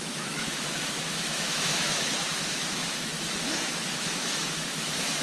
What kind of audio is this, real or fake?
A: fake